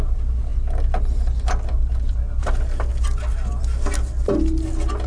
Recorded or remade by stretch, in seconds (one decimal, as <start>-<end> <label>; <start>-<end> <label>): 0.0-5.1 recorded